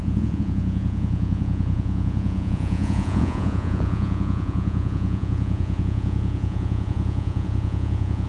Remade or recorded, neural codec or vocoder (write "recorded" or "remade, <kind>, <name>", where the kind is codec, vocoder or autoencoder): remade, vocoder, Vocos